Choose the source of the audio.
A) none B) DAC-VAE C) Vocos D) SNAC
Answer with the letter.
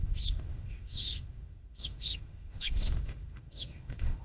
B